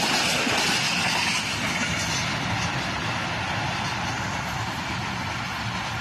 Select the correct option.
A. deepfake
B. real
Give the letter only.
B